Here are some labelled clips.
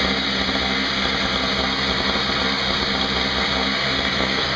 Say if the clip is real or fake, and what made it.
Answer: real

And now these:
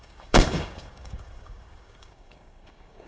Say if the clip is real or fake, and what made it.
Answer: fake, codec, DAC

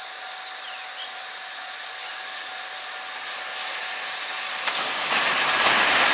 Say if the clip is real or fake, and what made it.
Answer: real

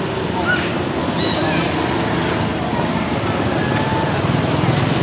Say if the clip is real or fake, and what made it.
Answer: real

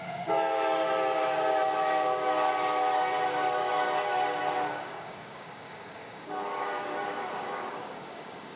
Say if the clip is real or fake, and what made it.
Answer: fake, codec, DAC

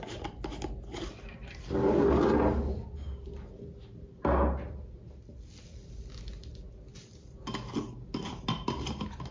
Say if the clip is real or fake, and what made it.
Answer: real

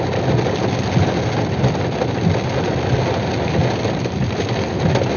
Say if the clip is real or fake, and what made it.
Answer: real